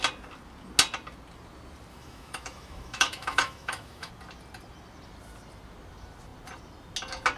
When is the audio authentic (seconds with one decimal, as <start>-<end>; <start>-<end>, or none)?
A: 0.0-1.9; 4.1-7.4